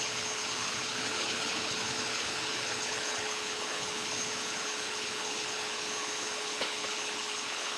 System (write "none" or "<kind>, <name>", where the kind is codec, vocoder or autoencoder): codec, HILCodec